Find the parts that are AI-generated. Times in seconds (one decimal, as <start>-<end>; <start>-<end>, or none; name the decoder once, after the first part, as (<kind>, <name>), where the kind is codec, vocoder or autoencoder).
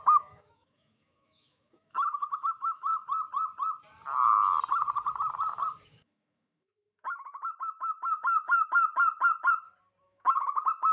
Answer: 0.0-2.9 (autoencoder, DAC-VAE); 5.9-8.9; 10.0-10.9